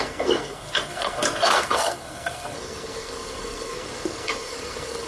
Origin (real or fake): fake